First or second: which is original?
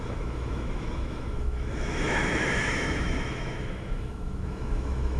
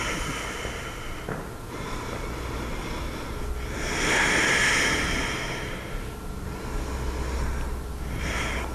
second